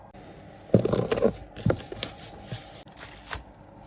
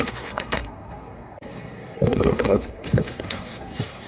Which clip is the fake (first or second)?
second